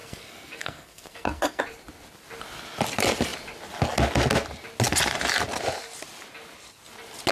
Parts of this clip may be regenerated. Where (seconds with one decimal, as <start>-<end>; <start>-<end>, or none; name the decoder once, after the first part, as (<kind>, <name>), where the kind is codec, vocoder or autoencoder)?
0.0-1.6 (codec, SNAC)